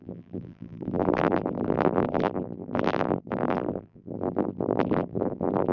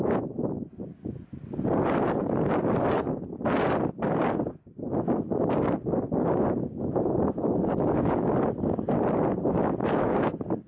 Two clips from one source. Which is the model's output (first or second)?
first